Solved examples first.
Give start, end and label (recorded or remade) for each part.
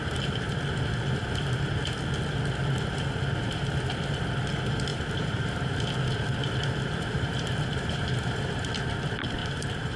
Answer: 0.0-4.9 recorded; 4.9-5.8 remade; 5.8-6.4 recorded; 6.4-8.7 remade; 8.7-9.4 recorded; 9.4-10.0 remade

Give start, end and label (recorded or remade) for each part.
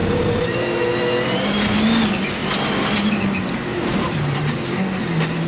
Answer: 0.0-0.6 remade; 0.6-3.7 recorded; 3.7-4.8 remade; 4.8-5.5 recorded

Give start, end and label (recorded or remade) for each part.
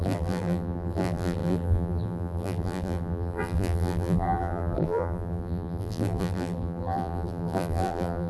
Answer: 0.0-8.3 remade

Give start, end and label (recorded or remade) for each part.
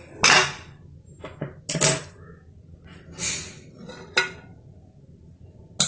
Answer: 0.0-5.9 recorded